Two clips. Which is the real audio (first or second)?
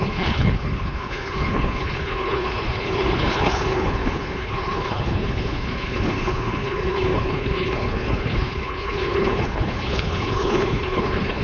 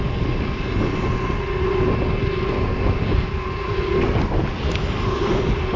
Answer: second